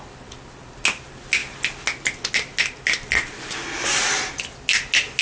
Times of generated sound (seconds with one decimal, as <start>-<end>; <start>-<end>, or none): none